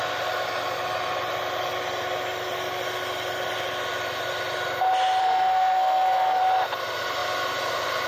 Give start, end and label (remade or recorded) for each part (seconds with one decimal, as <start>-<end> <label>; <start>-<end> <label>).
0.0-5.2 recorded; 5.2-6.4 remade; 6.4-8.1 recorded